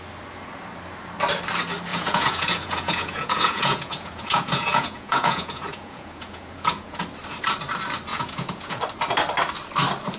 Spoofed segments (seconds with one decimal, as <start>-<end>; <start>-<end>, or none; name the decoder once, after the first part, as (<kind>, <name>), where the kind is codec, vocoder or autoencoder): 1.9-7.0 (vocoder, Vocos); 8.1-8.8